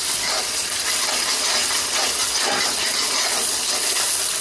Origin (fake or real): real